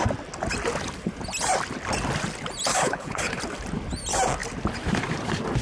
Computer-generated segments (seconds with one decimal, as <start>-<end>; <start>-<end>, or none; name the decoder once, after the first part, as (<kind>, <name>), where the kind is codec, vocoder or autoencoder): 2.7-3.4 (codec, HILCodec)